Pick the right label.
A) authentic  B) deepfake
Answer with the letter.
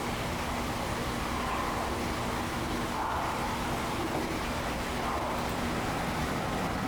A